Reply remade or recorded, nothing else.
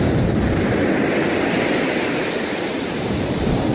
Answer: recorded